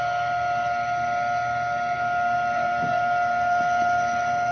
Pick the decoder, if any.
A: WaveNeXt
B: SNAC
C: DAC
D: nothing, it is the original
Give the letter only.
D